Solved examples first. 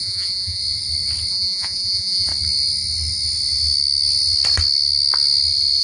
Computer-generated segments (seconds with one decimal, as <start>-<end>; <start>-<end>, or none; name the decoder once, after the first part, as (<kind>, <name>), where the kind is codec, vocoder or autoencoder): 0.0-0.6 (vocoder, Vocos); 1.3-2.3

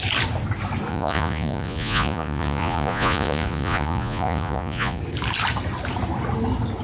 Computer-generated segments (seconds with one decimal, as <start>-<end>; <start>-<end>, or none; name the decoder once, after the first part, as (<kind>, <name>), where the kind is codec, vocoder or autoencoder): 0.9-5.0 (vocoder, Vocos)

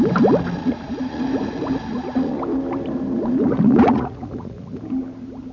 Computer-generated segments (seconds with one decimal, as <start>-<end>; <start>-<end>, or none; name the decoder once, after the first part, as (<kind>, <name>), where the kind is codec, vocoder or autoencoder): 0.6-1.2 (vocoder, Vocos); 1.9-2.4; 3.4-4.8